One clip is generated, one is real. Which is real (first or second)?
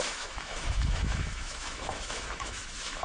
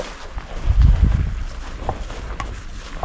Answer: second